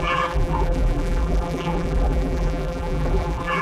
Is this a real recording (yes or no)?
no